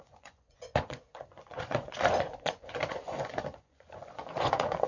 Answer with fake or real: fake